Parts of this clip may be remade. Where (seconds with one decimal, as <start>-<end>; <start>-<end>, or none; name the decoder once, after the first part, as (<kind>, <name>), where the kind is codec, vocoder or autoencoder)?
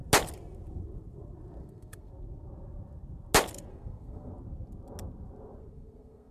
1.6-2.1 (codec, SNAC); 3.7-4.3; 5.6-6.3